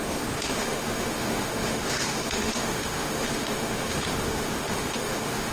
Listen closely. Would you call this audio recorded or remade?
remade